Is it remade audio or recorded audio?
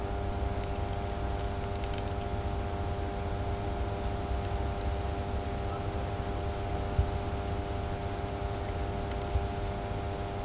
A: recorded